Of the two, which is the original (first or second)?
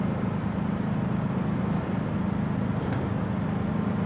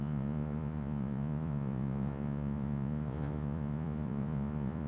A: first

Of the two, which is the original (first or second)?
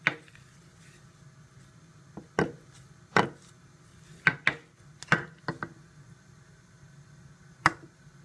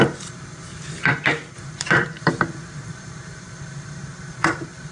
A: first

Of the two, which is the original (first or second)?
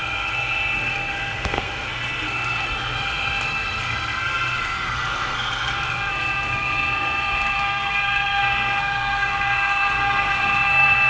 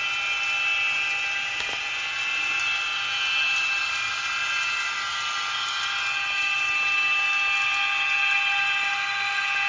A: second